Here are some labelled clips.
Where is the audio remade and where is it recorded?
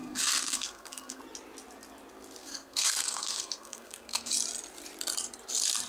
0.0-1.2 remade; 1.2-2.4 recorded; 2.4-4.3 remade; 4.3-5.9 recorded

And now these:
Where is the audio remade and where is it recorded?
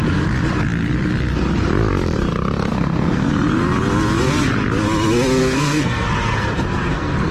0.0-2.7 recorded; 2.7-3.3 remade; 3.3-5.4 recorded; 5.4-7.3 remade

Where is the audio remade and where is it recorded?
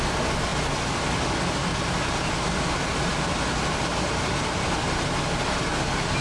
0.0-6.2 recorded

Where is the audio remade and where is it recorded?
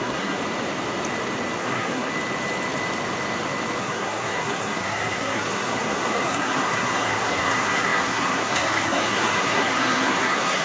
0.0-0.4 remade; 0.4-1.6 recorded; 1.6-2.1 remade; 2.1-3.8 recorded; 3.8-10.6 remade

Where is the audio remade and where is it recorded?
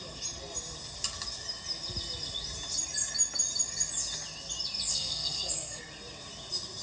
0.0-4.9 recorded; 4.9-5.8 remade; 5.8-6.8 recorded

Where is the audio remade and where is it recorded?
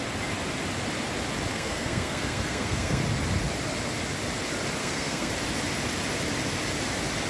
0.0-1.5 recorded; 1.5-3.0 remade; 3.0-4.8 recorded; 4.8-5.3 remade; 5.3-7.3 recorded